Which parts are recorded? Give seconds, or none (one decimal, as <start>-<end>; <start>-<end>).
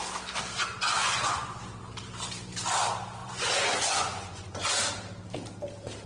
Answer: 0.0-0.7; 1.6-3.2; 4.7-6.1